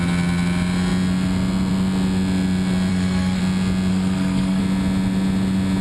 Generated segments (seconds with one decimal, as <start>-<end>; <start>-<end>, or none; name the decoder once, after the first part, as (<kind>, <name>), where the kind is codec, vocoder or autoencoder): 2.9-3.4 (codec, SNAC); 3.9-4.6